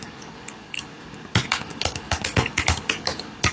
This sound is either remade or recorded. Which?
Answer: remade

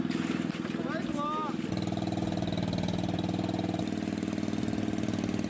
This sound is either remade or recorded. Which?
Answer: recorded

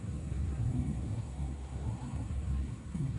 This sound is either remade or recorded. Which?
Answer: remade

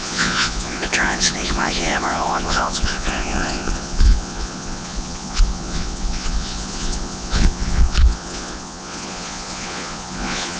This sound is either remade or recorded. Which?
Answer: remade